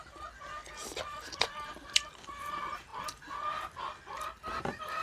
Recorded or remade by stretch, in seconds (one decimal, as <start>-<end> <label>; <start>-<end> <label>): 0.0-5.0 remade